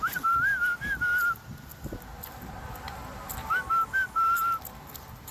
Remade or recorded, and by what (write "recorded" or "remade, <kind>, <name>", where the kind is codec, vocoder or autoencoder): recorded